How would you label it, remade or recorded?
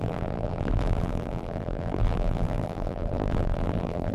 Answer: remade